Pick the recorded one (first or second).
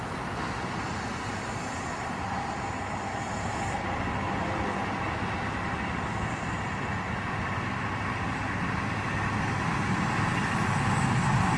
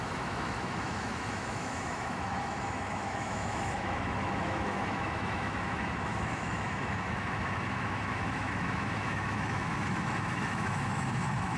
first